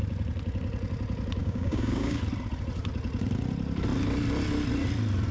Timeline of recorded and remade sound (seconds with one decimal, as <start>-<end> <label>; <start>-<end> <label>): 0.0-1.4 recorded; 1.4-2.2 remade; 2.2-5.3 recorded